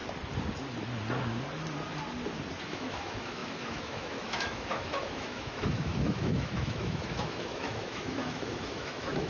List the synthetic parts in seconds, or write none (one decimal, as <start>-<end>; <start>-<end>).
2.6-9.3